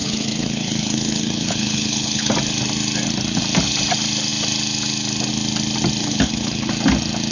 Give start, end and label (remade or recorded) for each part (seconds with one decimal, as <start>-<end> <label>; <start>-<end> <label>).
0.0-2.3 remade; 2.3-6.0 recorded; 6.0-6.7 remade; 6.7-7.3 recorded